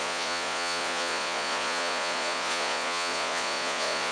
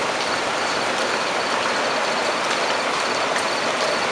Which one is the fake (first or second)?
first